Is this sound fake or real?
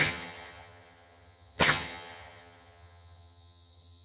fake